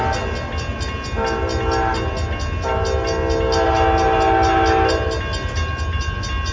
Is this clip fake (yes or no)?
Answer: no